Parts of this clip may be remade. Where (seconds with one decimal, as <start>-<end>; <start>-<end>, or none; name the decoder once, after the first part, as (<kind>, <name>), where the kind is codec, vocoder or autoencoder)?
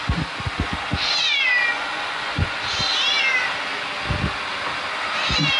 1.7-2.6 (vocoder, Vocos)